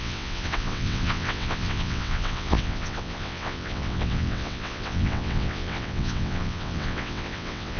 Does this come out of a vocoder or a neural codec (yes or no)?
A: yes